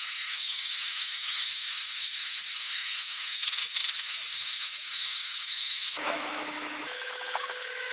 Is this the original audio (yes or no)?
no